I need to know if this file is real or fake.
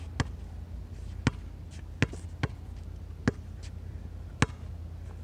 real